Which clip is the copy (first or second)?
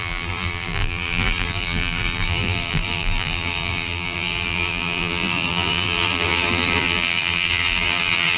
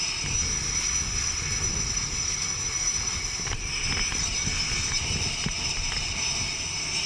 first